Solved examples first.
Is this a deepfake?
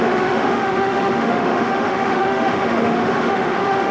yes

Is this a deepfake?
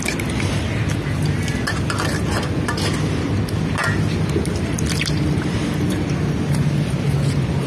no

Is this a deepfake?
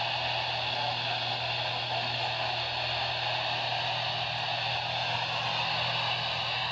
no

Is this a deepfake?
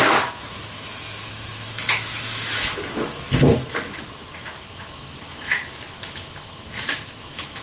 yes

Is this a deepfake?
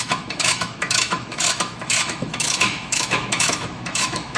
yes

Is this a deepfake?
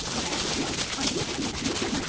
no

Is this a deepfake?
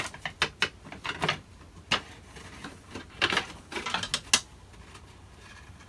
no